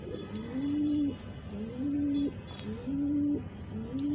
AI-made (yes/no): no